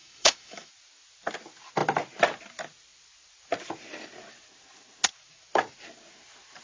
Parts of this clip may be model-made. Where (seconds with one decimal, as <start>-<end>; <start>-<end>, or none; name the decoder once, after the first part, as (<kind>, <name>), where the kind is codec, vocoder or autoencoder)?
0.0-0.7 (autoencoder, DAC-VAE)